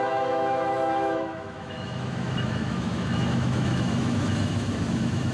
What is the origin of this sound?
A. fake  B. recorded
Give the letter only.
A